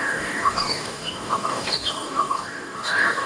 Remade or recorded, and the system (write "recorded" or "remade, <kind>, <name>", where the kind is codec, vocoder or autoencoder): remade, codec, DAC